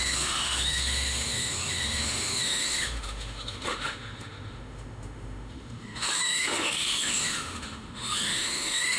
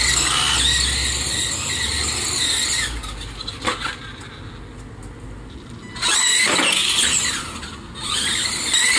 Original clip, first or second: second